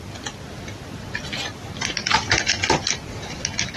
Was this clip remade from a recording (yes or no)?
no